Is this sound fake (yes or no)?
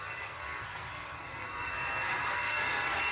yes